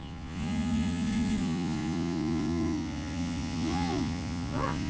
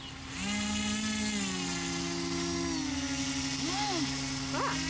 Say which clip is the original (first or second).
second